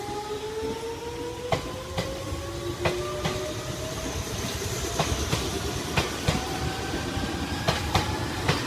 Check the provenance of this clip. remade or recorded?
recorded